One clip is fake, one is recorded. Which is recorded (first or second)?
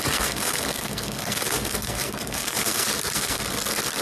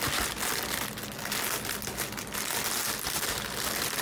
second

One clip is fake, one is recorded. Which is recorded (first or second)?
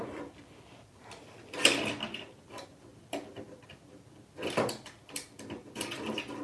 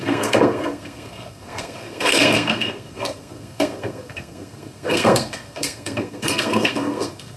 first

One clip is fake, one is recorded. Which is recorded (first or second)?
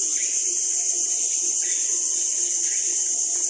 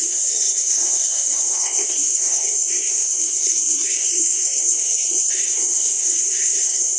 first